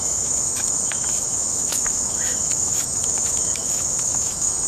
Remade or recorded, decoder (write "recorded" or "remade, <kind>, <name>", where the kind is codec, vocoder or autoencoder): remade, autoencoder, DAC-VAE